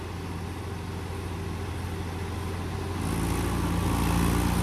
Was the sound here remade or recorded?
recorded